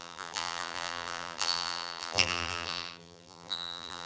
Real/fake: fake